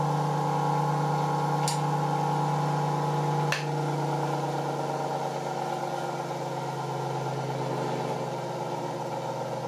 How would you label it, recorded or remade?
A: recorded